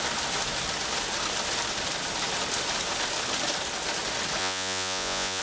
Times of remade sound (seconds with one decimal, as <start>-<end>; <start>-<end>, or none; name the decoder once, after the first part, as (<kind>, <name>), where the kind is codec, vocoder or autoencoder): 4.4-5.4 (vocoder, Vocos)

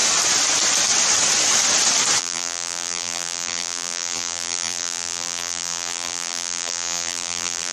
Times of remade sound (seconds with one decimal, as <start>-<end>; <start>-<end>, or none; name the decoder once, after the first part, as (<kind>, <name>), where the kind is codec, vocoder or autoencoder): 2.2-7.7 (vocoder, BigVGAN v2)

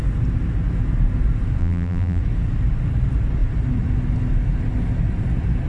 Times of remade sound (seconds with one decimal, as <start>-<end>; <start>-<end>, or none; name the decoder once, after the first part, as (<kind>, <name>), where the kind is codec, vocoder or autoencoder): 1.6-2.2 (vocoder, BigVGAN v2)

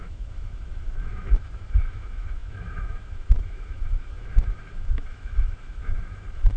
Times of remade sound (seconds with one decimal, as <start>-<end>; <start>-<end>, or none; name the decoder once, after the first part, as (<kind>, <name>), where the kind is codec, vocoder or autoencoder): 0.0-6.6 (autoencoder, DAC-VAE)

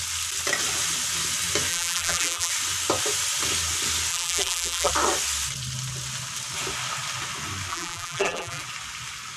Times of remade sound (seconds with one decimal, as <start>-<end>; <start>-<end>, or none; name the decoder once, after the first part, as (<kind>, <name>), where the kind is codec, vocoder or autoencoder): 1.7-2.5 (vocoder, BigVGAN v2); 4.1-4.9; 7.7-8.6

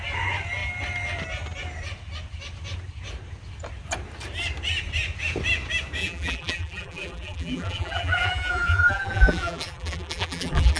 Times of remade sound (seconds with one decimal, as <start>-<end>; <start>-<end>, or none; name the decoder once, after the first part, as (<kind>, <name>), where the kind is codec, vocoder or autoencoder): 6.0-10.8 (vocoder, BigVGAN v2)

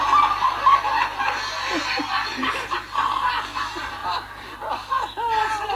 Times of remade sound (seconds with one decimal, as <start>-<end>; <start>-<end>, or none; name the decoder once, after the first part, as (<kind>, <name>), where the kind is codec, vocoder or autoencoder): 2.3-3.3 (vocoder, BigVGAN v2); 4.0-4.6

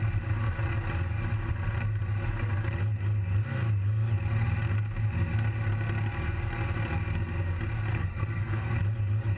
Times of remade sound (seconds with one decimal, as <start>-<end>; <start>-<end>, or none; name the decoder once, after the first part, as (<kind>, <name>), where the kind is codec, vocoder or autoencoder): 7.9-8.7 (codec, SNAC)